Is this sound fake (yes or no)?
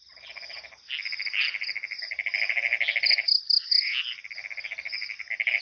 no